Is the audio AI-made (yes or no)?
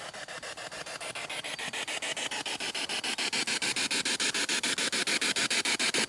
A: no